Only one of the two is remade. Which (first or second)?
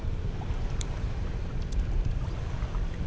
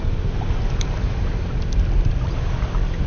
first